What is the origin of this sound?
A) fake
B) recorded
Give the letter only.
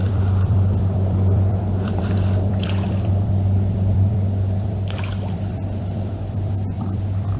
A